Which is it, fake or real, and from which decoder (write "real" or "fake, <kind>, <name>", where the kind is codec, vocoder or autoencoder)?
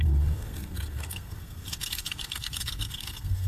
fake, codec, SNAC